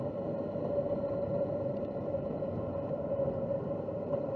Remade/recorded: remade